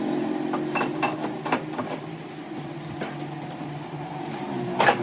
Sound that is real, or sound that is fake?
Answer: real